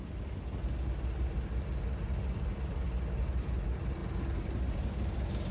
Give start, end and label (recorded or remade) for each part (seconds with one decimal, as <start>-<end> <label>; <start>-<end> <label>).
0.0-5.5 recorded